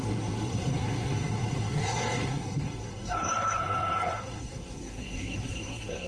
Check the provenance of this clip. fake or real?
fake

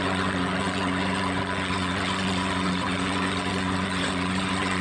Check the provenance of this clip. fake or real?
fake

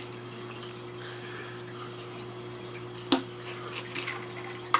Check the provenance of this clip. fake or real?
real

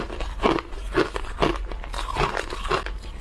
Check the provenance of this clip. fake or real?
real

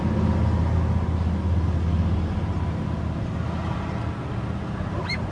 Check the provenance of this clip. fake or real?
real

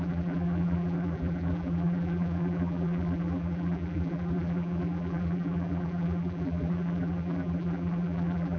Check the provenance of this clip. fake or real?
fake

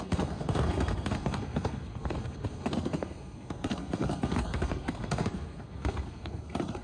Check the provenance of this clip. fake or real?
fake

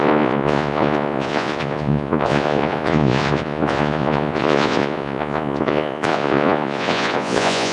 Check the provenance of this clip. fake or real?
fake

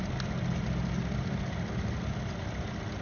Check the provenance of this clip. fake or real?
real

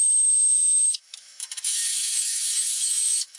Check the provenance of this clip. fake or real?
fake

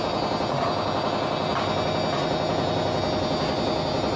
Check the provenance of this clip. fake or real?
real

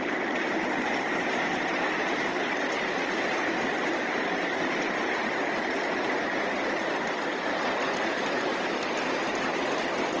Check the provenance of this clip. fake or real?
real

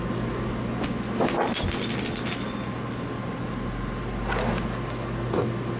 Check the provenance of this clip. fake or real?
real